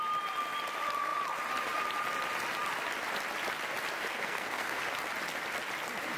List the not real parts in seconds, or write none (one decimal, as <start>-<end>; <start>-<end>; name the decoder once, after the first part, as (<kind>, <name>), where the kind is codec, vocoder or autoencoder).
4.0-4.8 (codec, SNAC)